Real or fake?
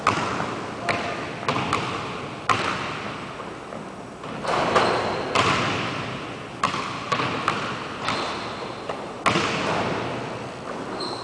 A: real